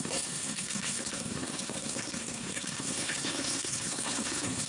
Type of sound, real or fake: fake